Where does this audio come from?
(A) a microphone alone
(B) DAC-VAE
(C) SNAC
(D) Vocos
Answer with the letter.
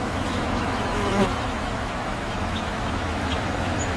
B